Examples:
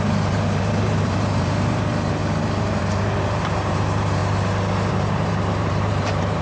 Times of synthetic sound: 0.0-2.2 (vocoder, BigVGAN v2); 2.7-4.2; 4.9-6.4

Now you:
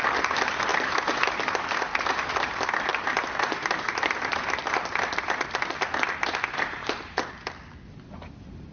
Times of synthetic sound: 0.7-1.6 (vocoder, BigVGAN v2); 2.9-4.4; 6.8-7.3

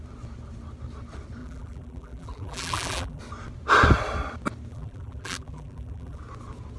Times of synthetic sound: 1.4-3.2 (vocoder, BigVGAN v2); 4.7-6.2

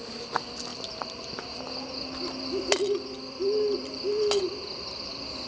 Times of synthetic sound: 0.7-1.6 (vocoder, BigVGAN v2); 3.8-4.4

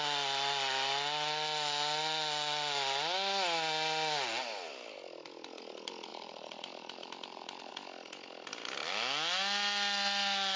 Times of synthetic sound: 6.1-7.7 (vocoder, BigVGAN v2)

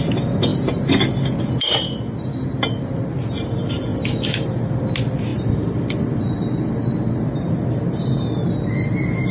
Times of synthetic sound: 3.9-4.6 (vocoder, BigVGAN v2); 5.3-7.4

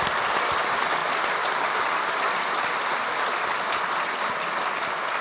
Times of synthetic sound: 1.0-4.1 (vocoder, BigVGAN v2)